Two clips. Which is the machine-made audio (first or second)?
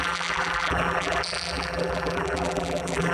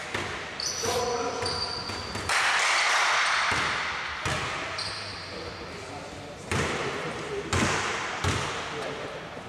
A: first